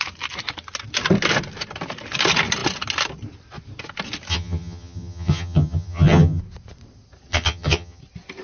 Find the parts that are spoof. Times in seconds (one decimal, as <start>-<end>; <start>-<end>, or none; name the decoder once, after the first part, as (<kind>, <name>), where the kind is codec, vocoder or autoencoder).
4.3-6.4 (vocoder, HiFi-GAN); 7.3-8.0